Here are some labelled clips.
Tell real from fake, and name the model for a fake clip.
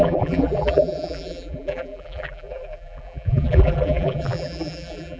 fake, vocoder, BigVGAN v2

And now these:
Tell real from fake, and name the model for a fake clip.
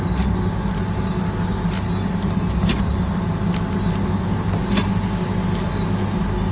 real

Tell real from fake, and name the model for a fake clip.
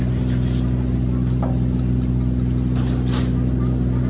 real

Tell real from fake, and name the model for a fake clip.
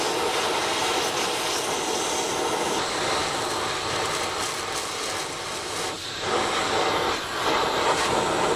real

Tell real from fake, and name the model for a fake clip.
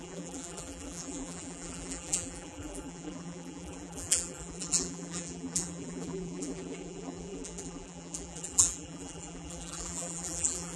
fake, vocoder, BigVGAN v2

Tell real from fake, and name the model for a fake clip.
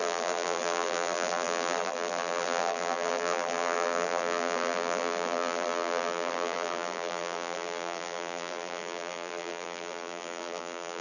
fake, vocoder, BigVGAN v2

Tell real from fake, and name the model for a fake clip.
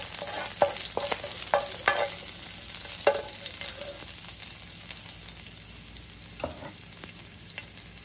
real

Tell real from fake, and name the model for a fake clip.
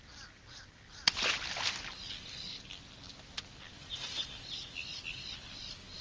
real